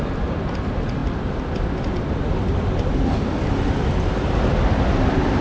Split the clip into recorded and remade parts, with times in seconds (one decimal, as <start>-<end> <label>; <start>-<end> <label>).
0.0-5.4 recorded